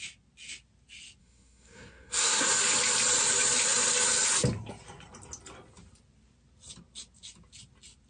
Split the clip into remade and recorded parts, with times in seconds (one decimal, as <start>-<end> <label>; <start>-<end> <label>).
0.0-1.2 recorded; 1.2-2.5 remade; 2.5-8.1 recorded